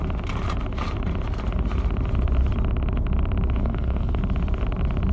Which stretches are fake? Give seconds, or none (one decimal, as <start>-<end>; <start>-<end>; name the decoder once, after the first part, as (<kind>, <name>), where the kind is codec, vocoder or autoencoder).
3.6-4.2 (codec, SNAC)